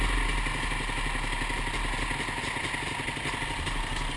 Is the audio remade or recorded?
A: recorded